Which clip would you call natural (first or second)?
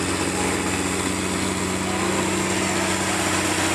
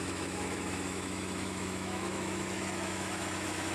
first